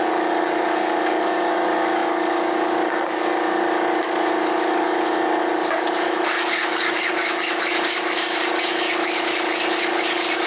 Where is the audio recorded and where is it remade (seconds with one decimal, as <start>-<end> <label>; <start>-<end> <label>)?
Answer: 0.0-10.5 remade

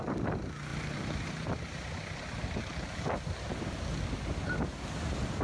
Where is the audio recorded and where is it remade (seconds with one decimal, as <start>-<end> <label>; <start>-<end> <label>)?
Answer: 0.0-0.7 recorded; 0.7-1.5 remade; 1.5-5.4 recorded

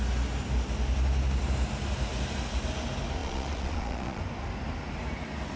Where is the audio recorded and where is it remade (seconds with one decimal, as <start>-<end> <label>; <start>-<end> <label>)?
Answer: 0.0-3.2 recorded; 3.2-4.2 remade; 4.2-5.6 recorded

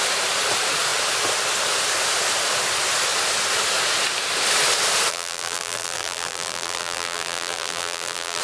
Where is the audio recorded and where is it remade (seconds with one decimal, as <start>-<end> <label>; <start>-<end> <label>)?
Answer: 0.0-5.1 recorded; 5.1-8.4 remade

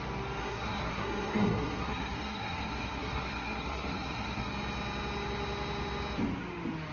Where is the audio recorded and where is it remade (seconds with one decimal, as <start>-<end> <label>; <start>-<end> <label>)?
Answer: 0.0-0.4 recorded; 0.4-4.5 remade; 4.5-6.9 recorded